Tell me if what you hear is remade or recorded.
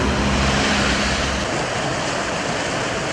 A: recorded